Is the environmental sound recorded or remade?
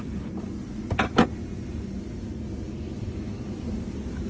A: recorded